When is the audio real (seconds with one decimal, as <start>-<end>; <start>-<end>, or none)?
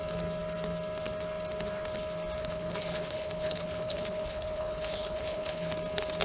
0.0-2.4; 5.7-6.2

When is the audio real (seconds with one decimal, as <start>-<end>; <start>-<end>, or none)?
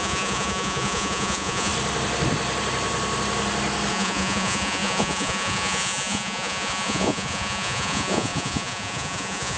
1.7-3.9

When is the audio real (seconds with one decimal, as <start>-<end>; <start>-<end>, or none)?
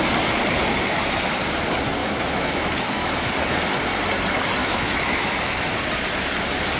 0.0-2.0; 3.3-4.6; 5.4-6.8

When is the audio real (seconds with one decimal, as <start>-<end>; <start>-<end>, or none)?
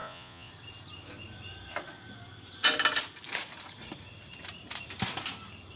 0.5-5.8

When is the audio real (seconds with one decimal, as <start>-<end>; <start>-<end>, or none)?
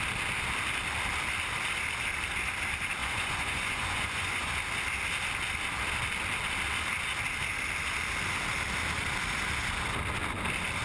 0.0-3.0; 4.5-10.8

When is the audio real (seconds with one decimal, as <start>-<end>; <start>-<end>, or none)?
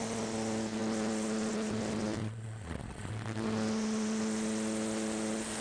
0.0-2.2; 3.1-5.6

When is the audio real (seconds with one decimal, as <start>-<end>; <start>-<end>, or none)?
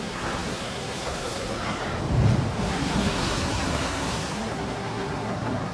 1.8-2.6